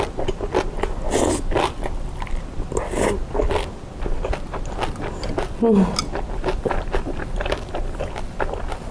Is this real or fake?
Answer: real